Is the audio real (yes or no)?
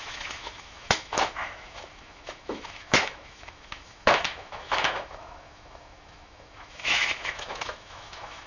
no